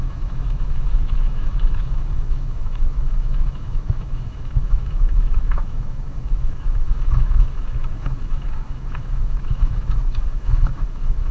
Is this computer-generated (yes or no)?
yes